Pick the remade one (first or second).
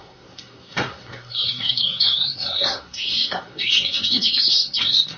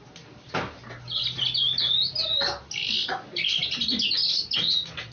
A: first